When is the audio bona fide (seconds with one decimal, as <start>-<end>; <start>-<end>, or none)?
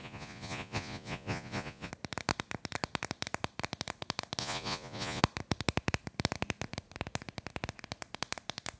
1.9-4.4; 5.2-8.8